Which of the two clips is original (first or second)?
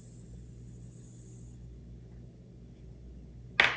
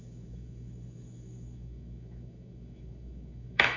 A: first